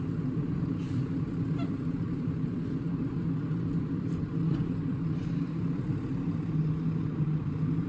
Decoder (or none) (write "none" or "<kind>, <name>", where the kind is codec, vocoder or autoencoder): vocoder, BigVGAN v2